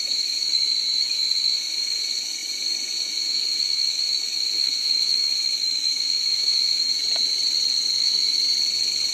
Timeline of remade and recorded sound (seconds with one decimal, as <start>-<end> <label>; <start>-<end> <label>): 0.0-7.0 remade; 7.0-8.0 recorded; 8.0-8.4 remade; 8.4-9.1 recorded